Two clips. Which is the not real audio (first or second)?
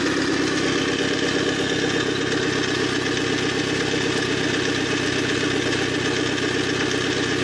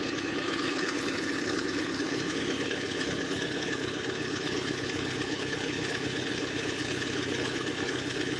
second